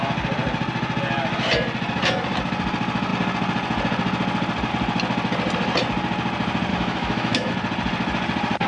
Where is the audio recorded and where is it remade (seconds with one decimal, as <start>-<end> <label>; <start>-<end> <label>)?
0.0-6.7 recorded; 6.7-7.5 remade; 7.5-8.7 recorded